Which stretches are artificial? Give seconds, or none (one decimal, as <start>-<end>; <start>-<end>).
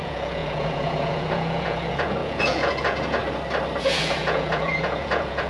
0.0-3.2; 3.8-5.5